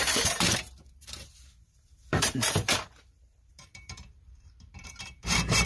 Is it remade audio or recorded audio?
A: remade